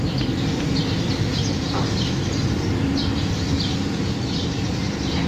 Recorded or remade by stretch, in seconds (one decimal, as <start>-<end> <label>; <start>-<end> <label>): 0.0-5.3 recorded